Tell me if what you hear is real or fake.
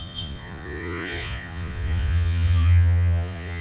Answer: fake